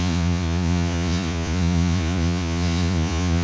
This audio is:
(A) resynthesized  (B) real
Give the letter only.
A